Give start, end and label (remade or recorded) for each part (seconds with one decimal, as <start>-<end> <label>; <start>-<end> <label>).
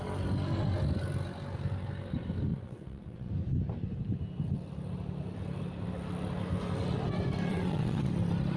0.0-2.5 recorded; 2.5-3.3 remade; 3.3-7.5 recorded; 7.5-8.1 remade; 8.1-8.6 recorded